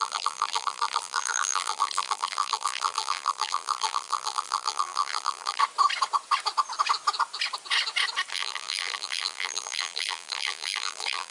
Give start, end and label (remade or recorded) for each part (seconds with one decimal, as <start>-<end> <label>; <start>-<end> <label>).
0.0-5.6 remade; 5.6-8.3 recorded; 8.3-11.3 remade